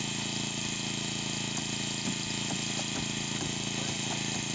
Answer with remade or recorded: recorded